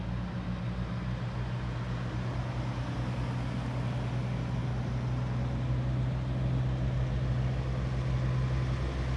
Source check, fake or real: real